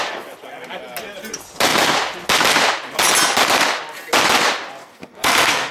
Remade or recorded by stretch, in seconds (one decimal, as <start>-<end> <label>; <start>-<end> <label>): 0.0-4.8 recorded; 4.8-5.7 remade